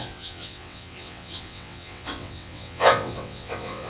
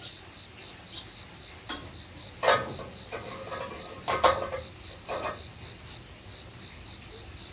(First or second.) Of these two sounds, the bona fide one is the second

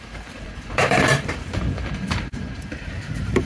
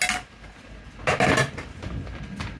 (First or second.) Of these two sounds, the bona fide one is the second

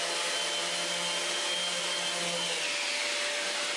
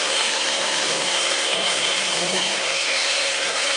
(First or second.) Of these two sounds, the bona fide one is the first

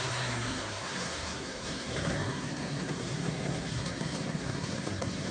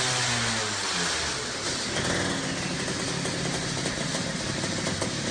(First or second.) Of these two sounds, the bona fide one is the second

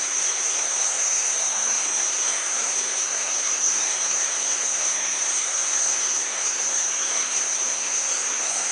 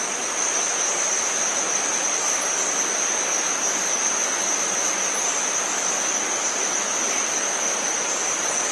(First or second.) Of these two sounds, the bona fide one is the second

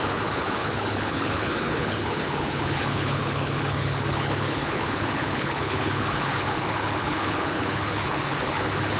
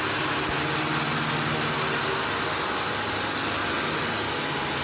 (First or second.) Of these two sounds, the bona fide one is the second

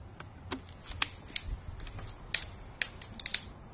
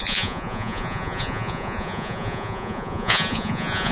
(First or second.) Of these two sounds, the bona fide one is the first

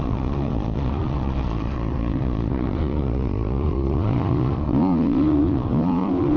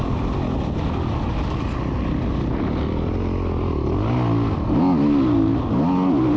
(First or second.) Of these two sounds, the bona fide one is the second